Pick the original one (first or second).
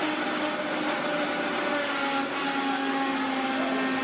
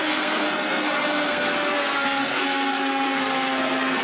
first